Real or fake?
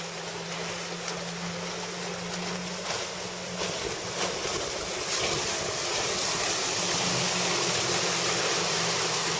real